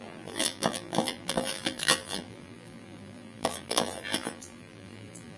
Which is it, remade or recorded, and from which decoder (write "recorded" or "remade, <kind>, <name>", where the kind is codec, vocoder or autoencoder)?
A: remade, vocoder, BigVGAN v2